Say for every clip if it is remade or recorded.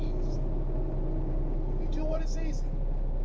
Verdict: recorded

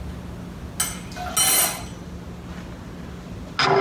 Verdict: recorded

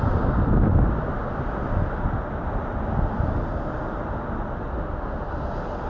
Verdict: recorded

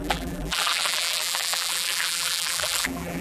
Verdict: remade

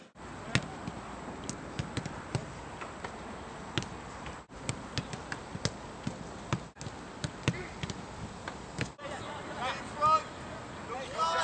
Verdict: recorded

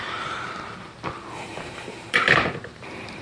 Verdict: remade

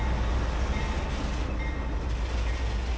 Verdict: recorded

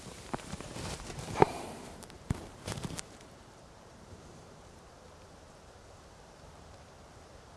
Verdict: remade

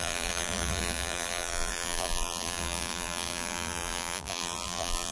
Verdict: remade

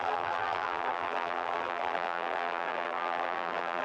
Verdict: remade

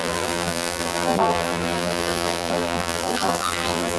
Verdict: remade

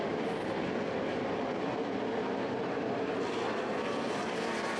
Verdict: recorded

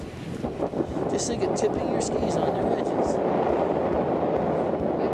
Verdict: recorded